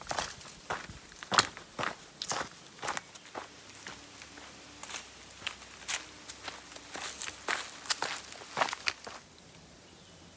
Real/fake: real